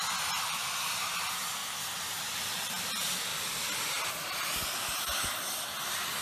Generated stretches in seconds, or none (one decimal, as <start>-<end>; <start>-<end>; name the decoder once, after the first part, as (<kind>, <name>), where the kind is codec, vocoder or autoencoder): none